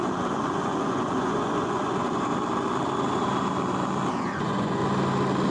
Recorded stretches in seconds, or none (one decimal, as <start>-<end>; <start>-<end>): 2.3-4.1; 4.8-5.5